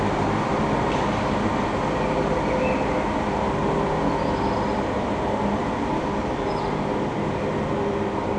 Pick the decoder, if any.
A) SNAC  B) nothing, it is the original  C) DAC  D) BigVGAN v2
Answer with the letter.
B